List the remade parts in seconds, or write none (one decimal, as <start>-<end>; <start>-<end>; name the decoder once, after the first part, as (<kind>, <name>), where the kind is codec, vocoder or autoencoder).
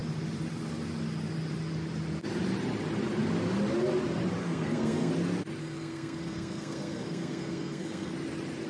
4.4-5.1 (codec, SNAC); 5.6-8.1